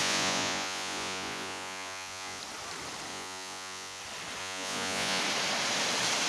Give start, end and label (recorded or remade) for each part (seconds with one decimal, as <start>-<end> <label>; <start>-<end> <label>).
0.0-2.4 remade; 2.4-3.1 recorded; 3.1-4.0 remade; 4.0-4.4 recorded; 4.4-5.2 remade; 5.2-6.3 recorded

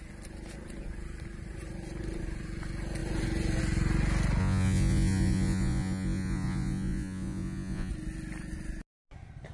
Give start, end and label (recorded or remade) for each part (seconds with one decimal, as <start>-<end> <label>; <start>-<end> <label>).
0.0-4.4 recorded; 4.4-7.9 remade; 7.9-9.5 recorded

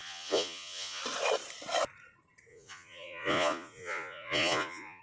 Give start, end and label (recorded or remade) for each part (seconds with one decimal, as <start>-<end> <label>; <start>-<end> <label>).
0.0-1.0 remade; 1.0-2.5 recorded; 2.5-5.0 remade

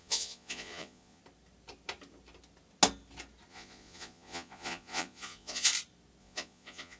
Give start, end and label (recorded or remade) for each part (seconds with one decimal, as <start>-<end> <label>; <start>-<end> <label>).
0.0-1.2 remade; 1.2-3.5 recorded; 3.5-5.7 remade; 5.7-6.2 recorded; 6.2-7.0 remade